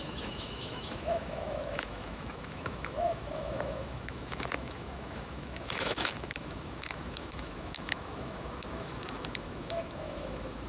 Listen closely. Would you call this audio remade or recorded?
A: remade